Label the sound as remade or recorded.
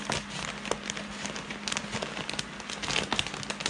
recorded